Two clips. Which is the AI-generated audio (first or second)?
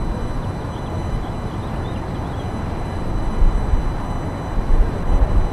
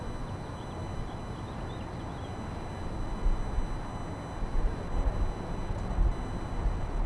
first